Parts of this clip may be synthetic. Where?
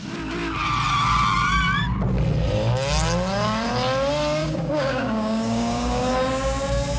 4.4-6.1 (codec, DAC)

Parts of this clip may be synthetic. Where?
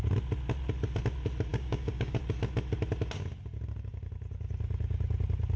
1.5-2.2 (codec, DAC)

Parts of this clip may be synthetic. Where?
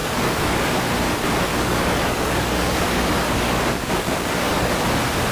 0.0-0.8 (codec, DAC); 1.5-4.7